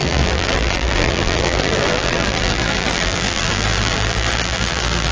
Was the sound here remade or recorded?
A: remade